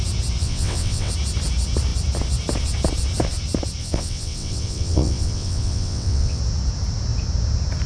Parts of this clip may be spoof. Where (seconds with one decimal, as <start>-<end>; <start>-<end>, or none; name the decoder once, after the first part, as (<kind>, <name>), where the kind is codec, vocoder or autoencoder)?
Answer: 0.4-1.1 (vocoder, WaveNeXt); 3.8-6.4